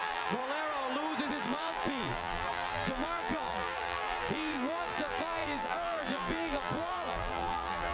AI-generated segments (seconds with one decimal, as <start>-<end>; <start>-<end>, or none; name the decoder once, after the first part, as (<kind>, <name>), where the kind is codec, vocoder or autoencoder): 0.0-0.4 (vocoder, BigVGAN v2); 1.3-7.9